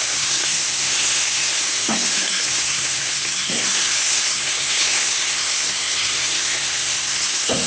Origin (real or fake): fake